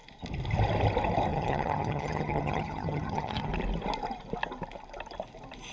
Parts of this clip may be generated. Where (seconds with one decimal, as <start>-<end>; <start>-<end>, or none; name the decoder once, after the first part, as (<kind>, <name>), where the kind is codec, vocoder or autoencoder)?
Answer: 1.3-3.5 (vocoder, HiFi-GAN)

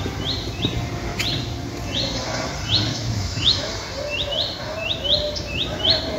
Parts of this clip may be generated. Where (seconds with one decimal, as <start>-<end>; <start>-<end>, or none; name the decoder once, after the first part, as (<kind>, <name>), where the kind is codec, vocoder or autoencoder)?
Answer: 2.9-3.7 (autoencoder, DAC-VAE)

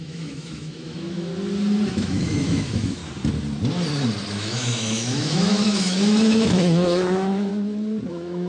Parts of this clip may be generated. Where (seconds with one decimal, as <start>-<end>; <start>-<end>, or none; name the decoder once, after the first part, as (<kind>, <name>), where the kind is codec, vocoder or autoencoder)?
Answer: 0.0-1.3 (autoencoder, DAC-VAE); 1.9-3.0; 4.3-7.5; 8.1-8.5

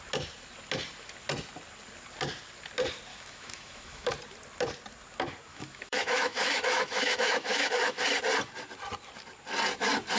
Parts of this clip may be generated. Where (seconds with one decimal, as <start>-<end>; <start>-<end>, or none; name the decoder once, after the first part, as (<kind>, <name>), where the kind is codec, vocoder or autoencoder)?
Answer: 3.1-4.1 (autoencoder, DAC-VAE); 5.5-8.0

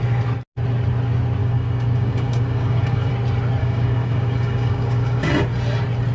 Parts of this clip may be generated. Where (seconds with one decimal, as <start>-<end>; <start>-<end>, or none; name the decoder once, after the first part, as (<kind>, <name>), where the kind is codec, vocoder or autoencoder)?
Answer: 1.4-3.1 (codec, DAC); 3.6-5.3

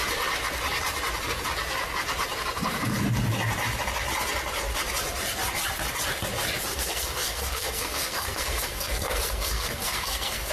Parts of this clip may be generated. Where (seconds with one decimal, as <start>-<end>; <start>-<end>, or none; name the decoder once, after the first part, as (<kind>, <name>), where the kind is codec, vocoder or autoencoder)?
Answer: 6.7-10.5 (codec, SNAC)

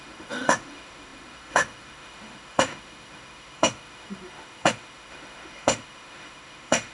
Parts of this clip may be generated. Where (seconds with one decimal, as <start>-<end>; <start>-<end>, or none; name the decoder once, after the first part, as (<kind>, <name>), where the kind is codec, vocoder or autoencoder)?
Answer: 0.0-6.9 (autoencoder, DAC-VAE)